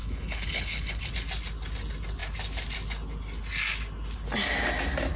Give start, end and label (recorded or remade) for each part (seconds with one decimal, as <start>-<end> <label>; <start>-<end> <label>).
0.0-1.1 remade; 1.1-5.2 recorded